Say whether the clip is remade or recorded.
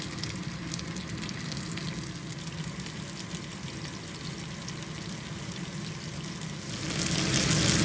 recorded